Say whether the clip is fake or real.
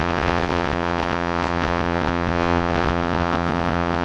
fake